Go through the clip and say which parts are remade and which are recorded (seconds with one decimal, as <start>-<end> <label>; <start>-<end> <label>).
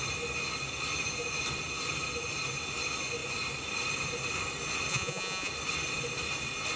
0.0-4.9 recorded; 4.9-5.5 remade; 5.5-6.8 recorded